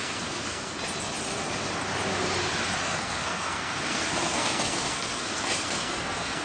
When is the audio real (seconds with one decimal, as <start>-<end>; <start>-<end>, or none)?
0.7-2.8